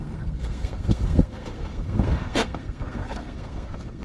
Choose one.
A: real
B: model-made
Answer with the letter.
B